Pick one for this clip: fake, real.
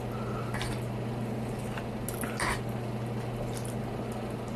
real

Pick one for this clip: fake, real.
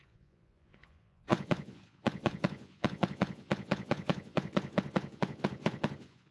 fake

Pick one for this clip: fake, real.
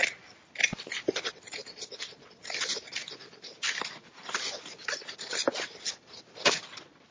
real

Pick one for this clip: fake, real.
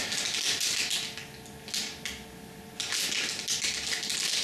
real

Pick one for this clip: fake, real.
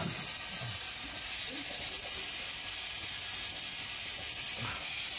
real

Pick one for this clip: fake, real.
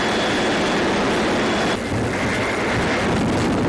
real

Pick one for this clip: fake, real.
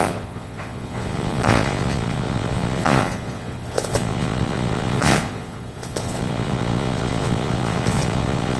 fake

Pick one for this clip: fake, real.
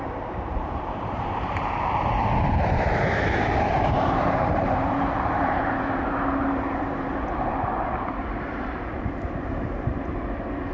fake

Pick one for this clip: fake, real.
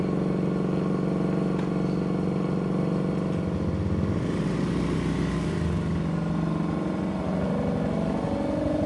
real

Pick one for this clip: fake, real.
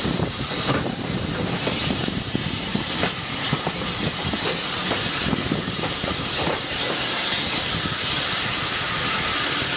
fake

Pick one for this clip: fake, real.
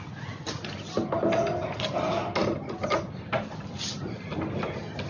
real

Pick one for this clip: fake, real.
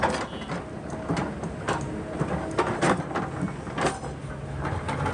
real